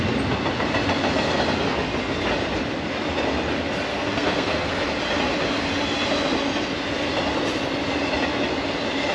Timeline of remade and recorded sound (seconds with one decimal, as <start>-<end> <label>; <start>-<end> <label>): 0.0-3.9 recorded; 3.9-4.7 remade; 4.7-9.1 recorded